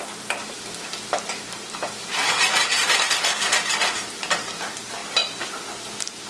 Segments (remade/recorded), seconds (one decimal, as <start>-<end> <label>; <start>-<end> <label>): 0.0-6.3 recorded